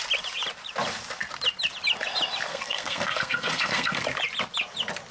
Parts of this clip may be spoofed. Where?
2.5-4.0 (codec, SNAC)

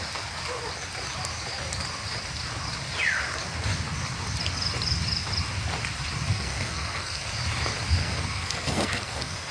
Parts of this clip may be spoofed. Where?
6.3-7.3 (codec, SNAC); 8.0-9.5